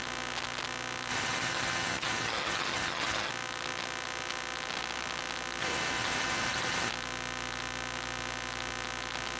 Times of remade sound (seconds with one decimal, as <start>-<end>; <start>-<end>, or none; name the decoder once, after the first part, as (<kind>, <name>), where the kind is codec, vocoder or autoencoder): 1.1-3.3 (vocoder, HiFi-GAN); 5.6-6.9